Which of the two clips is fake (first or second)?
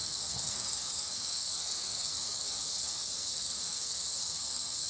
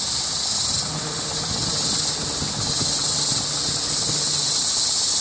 first